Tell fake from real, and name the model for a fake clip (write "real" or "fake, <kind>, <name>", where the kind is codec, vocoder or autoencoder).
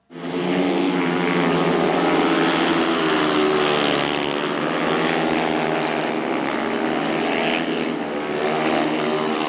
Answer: real